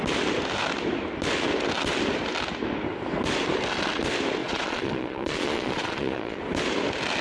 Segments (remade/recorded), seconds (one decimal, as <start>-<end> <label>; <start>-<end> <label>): 0.0-4.4 recorded; 4.4-6.4 remade; 6.4-7.2 recorded